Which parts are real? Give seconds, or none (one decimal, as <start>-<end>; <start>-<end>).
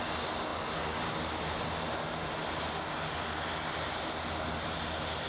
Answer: 0.0-5.3